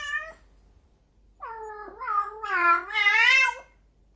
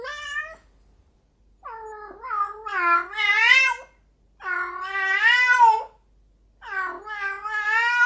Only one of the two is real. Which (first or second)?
second